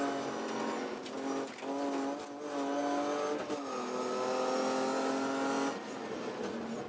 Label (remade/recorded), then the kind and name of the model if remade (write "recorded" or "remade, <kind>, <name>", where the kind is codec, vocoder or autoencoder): recorded